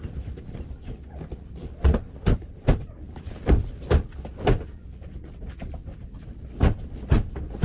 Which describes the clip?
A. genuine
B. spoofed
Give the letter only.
A